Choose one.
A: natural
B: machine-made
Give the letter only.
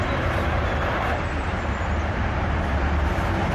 B